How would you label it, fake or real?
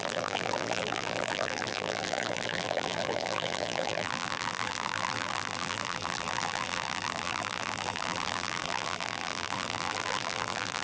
fake